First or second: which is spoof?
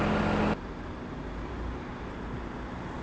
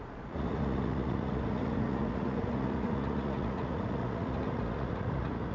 second